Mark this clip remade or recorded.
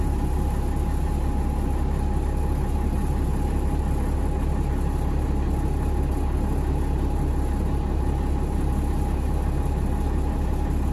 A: recorded